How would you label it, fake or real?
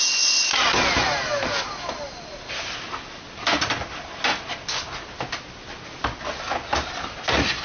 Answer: real